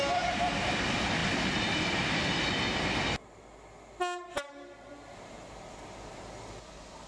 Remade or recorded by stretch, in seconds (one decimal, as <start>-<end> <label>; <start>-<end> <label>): 0.0-7.1 recorded